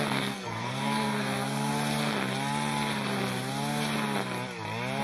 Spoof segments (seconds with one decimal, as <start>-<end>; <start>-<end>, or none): 0.0-1.7